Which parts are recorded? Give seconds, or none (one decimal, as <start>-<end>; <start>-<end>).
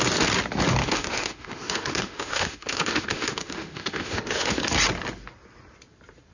0.0-0.8; 4.6-6.3